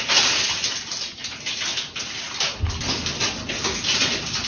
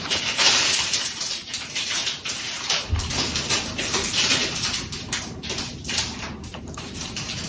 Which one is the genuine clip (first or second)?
first